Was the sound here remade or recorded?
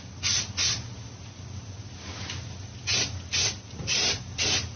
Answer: recorded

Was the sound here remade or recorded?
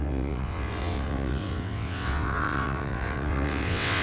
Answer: remade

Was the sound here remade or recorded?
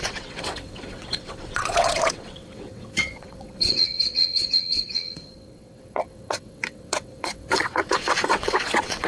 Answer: remade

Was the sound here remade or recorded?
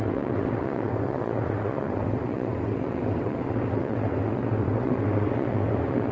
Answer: remade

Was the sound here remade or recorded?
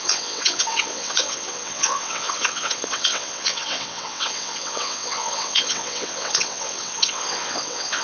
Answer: remade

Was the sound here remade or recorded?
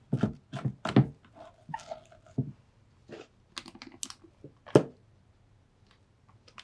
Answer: recorded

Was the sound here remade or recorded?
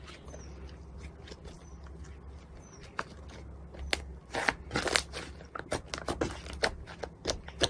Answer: recorded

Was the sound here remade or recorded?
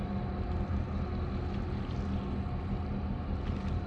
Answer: recorded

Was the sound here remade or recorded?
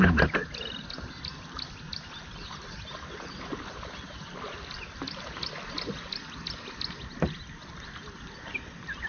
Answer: recorded